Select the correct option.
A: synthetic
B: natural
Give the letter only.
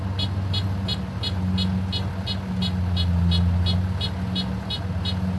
B